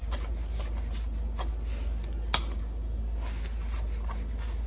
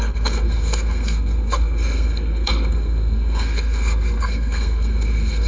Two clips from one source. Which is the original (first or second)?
first